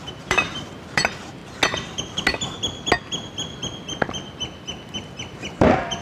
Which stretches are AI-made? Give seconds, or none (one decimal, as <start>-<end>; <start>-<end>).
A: 0.0-1.4; 5.0-6.0